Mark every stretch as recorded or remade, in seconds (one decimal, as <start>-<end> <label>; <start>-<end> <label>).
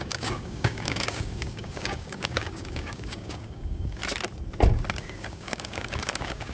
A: 0.0-4.0 remade; 4.0-5.0 recorded; 5.0-6.5 remade